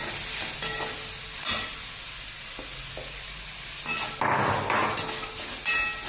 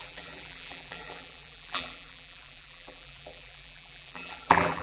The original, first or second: first